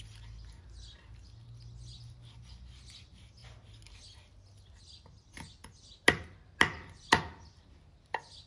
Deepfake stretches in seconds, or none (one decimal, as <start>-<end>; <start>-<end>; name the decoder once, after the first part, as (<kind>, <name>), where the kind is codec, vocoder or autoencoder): none